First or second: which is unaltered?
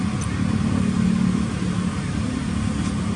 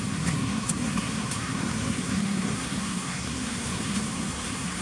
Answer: first